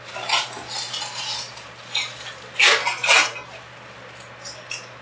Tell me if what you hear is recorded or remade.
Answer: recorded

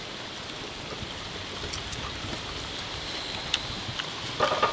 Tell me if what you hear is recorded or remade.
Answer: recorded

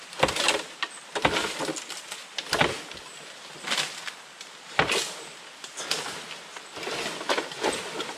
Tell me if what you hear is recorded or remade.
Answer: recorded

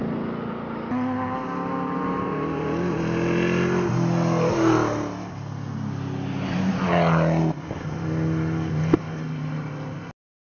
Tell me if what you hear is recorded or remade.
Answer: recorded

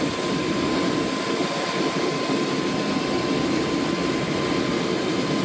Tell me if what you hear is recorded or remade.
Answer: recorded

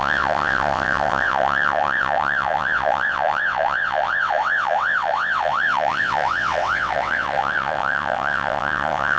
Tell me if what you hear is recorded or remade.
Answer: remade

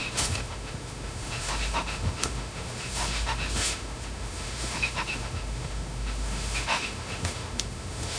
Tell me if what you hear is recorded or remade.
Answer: remade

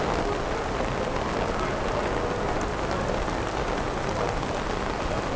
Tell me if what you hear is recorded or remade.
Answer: recorded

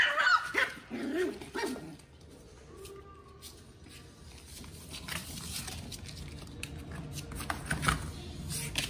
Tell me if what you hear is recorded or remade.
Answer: recorded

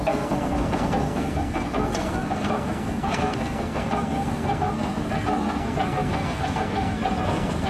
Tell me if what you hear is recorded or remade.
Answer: remade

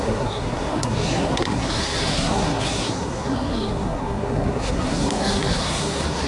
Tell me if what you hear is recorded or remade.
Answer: remade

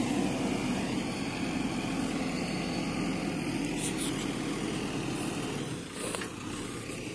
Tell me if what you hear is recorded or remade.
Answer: recorded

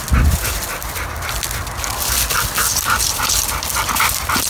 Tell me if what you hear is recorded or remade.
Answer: recorded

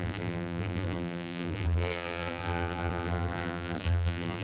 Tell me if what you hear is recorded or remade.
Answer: remade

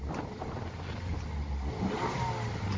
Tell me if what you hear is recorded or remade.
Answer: recorded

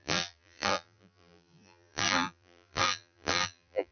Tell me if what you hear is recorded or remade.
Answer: remade